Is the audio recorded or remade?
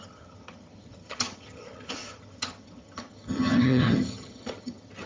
remade